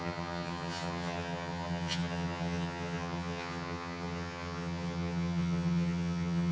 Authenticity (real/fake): fake